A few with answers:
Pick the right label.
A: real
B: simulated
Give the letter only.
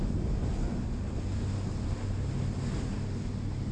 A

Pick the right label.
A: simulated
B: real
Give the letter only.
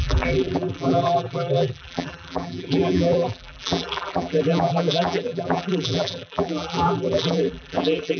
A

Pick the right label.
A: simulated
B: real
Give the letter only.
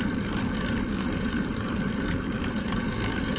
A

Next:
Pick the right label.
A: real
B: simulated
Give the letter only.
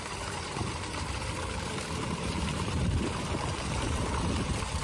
B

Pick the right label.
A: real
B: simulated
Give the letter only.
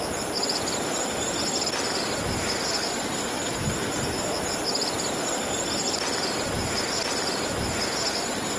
A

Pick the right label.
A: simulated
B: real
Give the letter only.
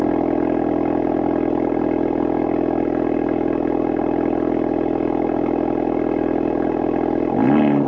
B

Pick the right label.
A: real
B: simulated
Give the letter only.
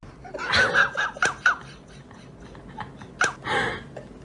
A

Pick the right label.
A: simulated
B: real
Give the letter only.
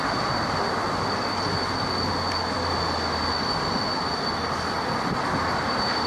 B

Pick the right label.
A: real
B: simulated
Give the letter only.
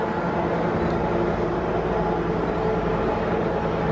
A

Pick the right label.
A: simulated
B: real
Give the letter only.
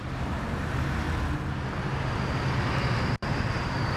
B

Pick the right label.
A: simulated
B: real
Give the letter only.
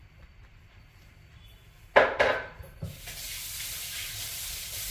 A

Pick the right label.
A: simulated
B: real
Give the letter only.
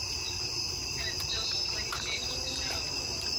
A